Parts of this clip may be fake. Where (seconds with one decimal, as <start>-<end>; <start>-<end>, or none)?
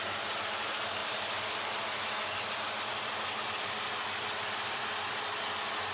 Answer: none